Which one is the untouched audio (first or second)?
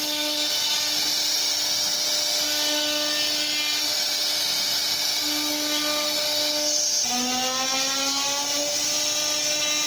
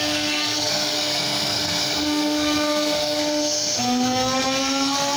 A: first